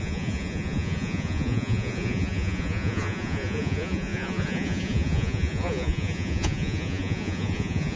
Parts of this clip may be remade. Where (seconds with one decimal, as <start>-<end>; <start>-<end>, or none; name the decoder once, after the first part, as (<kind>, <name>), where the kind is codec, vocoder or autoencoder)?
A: 0.0-8.0 (vocoder, Vocos)